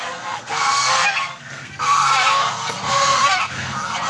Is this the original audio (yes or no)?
no